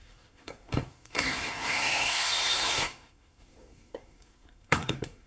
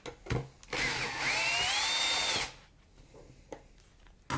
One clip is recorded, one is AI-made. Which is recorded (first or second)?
second